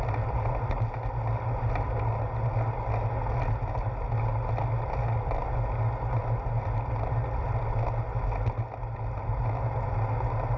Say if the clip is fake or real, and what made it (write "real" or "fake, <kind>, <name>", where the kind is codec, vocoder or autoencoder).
real